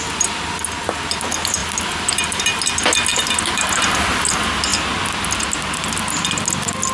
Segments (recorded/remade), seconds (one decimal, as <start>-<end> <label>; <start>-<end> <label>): 0.0-1.6 recorded; 1.6-2.4 remade; 2.4-3.1 recorded; 3.1-4.1 remade; 4.1-6.9 recorded